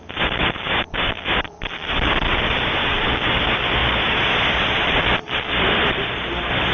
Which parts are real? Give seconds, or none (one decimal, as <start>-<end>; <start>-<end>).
0.0-2.8; 3.4-6.7